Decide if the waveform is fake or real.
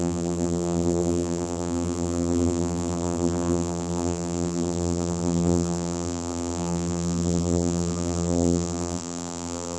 fake